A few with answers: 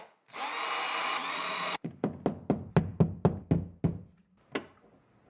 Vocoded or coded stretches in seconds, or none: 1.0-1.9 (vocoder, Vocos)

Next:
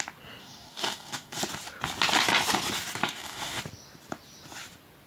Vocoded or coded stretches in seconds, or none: 0.4-1.4 (codec, DAC); 3.0-3.6